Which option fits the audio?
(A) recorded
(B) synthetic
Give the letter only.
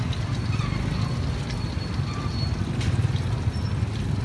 A